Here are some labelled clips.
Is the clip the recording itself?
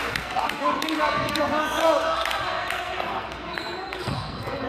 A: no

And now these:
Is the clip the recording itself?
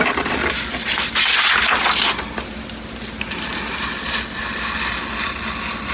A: yes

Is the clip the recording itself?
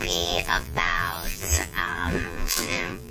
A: no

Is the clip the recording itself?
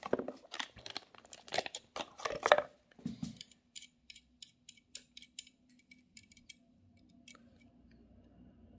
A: yes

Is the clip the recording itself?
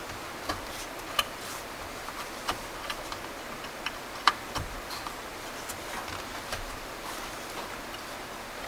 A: no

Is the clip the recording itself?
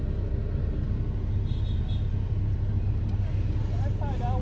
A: yes